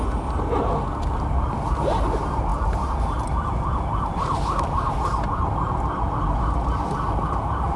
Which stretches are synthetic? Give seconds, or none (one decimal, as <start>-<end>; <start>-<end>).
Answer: none